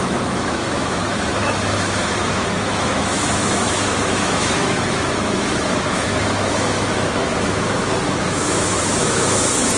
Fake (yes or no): yes